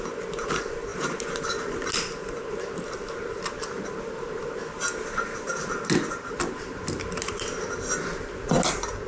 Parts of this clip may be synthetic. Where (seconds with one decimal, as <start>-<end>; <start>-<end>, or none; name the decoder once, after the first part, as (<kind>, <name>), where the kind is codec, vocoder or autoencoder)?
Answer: none